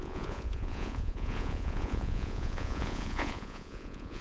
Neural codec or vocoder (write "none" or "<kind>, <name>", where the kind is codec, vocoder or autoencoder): vocoder, Vocos